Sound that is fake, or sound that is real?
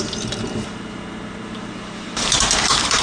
fake